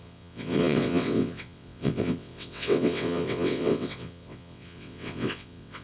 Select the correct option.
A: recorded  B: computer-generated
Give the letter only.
B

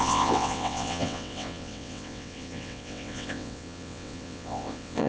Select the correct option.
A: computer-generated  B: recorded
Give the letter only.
A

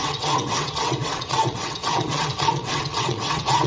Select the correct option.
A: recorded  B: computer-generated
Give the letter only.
B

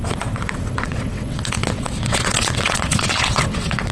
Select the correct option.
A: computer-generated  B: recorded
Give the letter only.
A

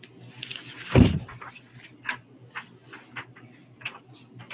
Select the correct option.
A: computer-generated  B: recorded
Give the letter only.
B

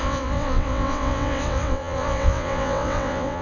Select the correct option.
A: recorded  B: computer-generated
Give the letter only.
B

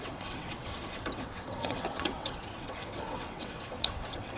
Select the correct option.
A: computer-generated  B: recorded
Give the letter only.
A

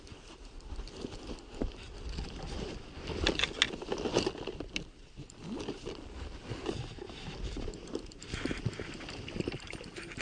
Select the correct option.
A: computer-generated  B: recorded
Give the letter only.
B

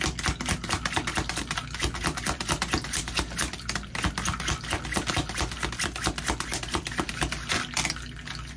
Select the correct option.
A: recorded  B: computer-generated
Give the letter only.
A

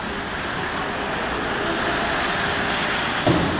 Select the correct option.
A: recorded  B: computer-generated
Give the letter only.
A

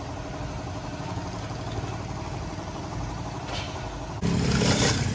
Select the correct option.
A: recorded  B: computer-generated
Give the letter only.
A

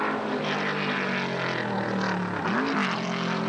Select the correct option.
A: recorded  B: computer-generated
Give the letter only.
A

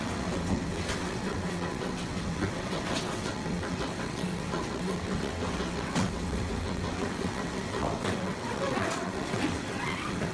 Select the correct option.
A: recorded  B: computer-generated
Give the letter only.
B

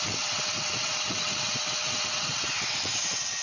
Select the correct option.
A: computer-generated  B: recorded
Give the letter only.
A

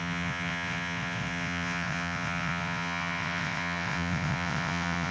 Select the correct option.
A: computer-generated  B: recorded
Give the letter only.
A